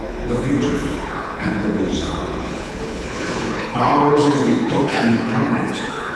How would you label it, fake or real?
fake